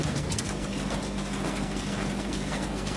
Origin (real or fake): fake